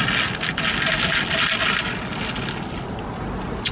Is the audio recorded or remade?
recorded